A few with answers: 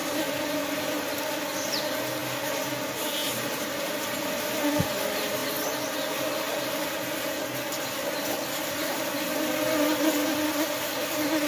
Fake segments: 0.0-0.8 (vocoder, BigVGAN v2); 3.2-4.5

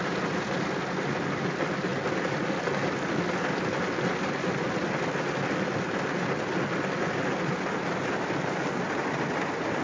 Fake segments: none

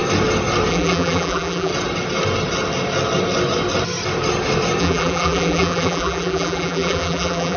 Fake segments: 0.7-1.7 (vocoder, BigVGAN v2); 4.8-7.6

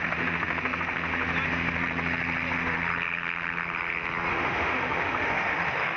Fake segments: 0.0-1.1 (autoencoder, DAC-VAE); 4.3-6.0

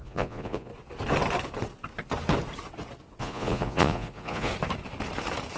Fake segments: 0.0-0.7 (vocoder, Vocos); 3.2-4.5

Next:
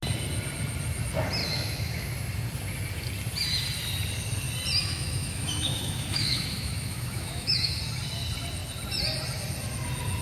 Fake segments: 1.4-2.1 (autoencoder, DAC-VAE); 4.8-7.8

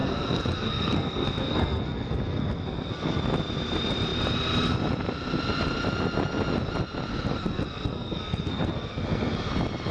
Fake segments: 0.0-3.2 (codec, SNAC); 7.1-9.5

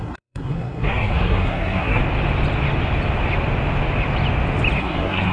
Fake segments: 0.0-2.0 (codec, SNAC); 4.8-5.3